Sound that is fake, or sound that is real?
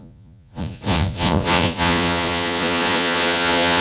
fake